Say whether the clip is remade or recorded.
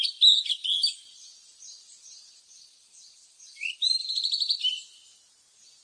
recorded